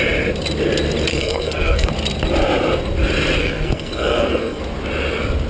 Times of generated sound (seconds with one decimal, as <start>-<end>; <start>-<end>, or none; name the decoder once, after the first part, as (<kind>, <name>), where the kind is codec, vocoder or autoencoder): 1.1-1.9 (codec, SNAC); 3.4-4.6